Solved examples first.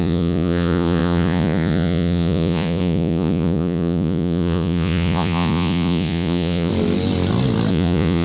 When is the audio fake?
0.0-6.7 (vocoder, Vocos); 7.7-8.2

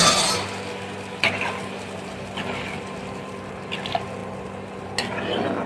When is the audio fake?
none

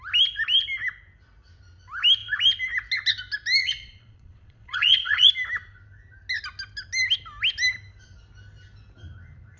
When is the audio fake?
3.6-5.3 (vocoder, Vocos)